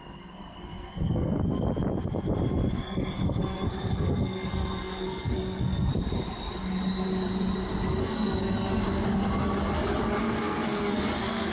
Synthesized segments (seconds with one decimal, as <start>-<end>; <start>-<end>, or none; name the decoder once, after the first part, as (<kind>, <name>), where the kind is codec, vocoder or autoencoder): 0.0-1.4 (codec, SNAC); 2.7-5.9; 8.0-8.8; 10.2-11.5